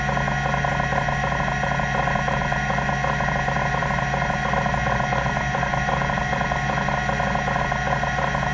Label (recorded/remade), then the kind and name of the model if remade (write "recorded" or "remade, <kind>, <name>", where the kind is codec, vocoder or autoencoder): recorded